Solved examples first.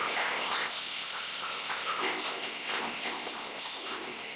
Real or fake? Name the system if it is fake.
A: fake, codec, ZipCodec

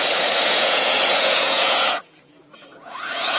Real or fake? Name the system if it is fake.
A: fake, vocoder, Vocos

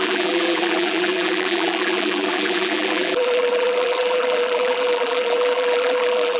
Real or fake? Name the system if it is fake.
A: fake, vocoder, BigVGAN v2